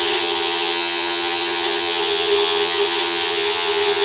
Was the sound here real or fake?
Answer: fake